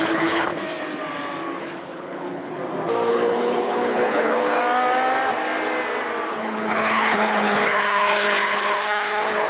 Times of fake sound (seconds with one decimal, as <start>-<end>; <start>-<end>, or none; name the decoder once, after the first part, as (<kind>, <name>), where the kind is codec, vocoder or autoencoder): 0.0-0.5 (codec, HILCodec); 1.6-2.6; 3.1-4.6; 6.3-9.5